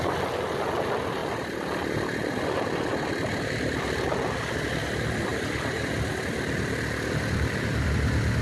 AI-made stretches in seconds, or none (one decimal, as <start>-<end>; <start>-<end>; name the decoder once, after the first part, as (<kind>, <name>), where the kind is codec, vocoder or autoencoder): 5.3-5.9 (vocoder, BigVGAN v2)